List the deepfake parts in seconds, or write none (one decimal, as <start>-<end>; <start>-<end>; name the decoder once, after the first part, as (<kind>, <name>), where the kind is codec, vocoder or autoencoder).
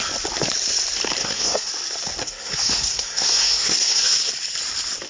1.2-1.7 (codec, SNAC); 2.2-4.3